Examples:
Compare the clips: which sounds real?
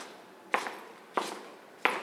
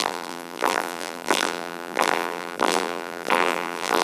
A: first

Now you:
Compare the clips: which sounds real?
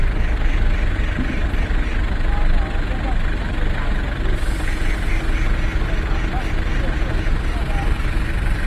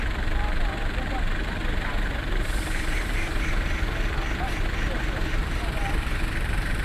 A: first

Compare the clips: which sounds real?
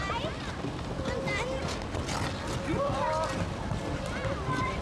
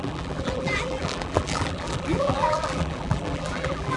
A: first